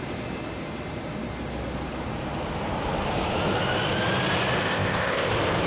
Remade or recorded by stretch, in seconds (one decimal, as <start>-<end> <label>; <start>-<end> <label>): 0.0-4.6 recorded; 4.6-5.3 remade; 5.3-5.7 recorded

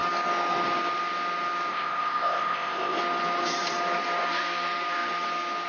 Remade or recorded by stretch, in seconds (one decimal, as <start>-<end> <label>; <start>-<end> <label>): 0.0-1.7 recorded; 1.7-3.0 remade; 3.0-5.7 recorded

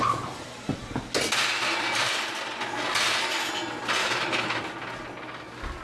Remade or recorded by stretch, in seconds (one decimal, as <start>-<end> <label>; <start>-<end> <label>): 0.0-4.0 recorded; 4.0-4.6 remade; 4.6-5.8 recorded

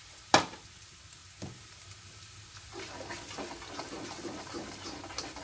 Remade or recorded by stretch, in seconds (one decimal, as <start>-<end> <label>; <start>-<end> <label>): 0.0-5.4 recorded

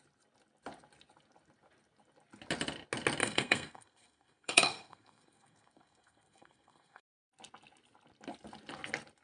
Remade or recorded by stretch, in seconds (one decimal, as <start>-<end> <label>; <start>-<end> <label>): 0.0-3.2 recorded; 3.2-7.2 remade; 7.2-9.2 recorded

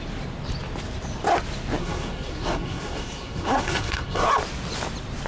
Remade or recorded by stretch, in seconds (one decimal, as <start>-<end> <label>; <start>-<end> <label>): 0.0-1.8 recorded; 1.8-4.3 remade; 4.3-5.3 recorded

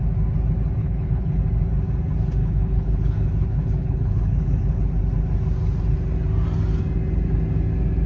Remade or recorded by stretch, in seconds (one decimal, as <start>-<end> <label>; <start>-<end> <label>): 0.0-0.8 recorded; 0.8-1.4 remade; 1.4-2.4 recorded; 2.4-5.0 remade; 5.0-8.1 recorded

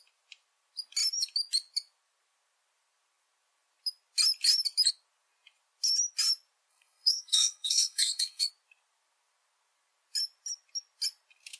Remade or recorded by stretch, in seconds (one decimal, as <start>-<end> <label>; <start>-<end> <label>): 0.0-6.7 recorded; 6.7-8.5 remade; 8.5-11.6 recorded